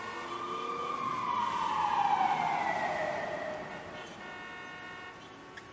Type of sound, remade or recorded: recorded